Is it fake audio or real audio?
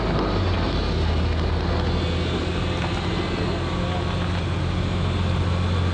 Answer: real